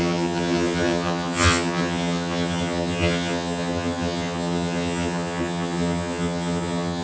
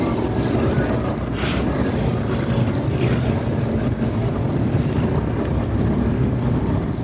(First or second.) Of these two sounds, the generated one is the first